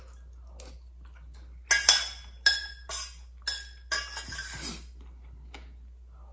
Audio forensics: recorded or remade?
recorded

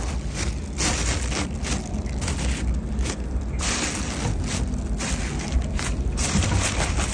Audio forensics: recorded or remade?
recorded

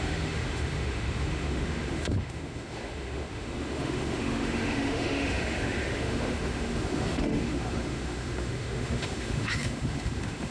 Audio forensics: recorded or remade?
remade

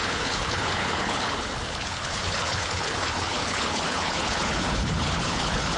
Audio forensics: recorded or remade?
remade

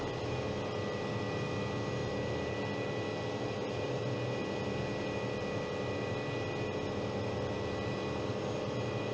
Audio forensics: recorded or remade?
recorded